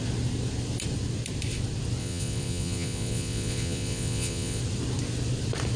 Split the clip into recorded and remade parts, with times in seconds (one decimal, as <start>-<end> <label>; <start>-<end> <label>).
0.0-2.0 recorded; 2.0-4.6 remade; 4.6-5.8 recorded